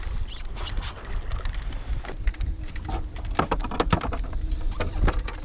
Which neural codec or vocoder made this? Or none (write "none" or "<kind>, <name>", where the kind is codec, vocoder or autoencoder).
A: none